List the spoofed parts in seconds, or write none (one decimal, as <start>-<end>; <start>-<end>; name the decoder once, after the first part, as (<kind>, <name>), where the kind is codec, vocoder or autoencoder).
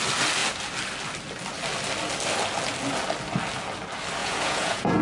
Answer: 4.2-5.0 (vocoder, Vocos)